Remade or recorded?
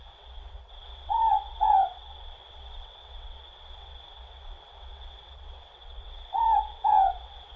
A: remade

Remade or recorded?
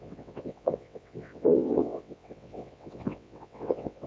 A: remade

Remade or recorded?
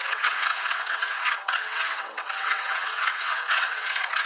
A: remade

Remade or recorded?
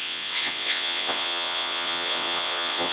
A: remade